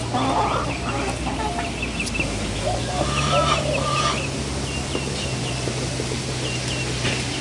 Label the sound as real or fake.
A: real